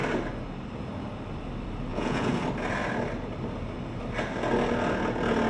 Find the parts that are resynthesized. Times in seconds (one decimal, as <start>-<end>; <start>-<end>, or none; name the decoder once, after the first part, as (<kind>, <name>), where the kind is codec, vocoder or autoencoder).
1.9-2.4 (vocoder, Vocos)